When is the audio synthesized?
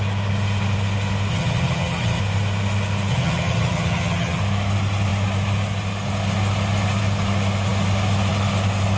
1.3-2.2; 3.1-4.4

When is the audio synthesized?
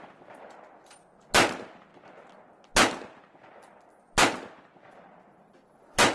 none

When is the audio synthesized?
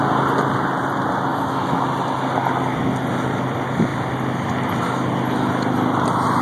1.3-1.8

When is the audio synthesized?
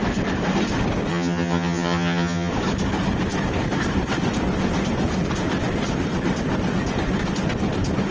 1.1-2.5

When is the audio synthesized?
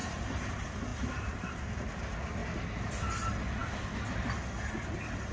0.0-0.5; 0.9-1.9; 2.4-2.9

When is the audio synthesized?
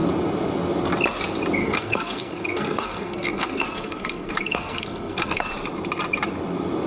1.6-5.5